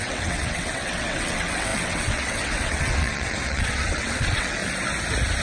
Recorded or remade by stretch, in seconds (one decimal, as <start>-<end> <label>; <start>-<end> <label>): 0.0-4.6 remade; 4.6-5.4 recorded